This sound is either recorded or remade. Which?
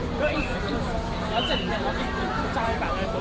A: recorded